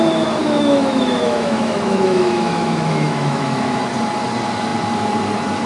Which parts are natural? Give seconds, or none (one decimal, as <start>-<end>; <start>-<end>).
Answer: 0.0-0.4; 3.8-5.7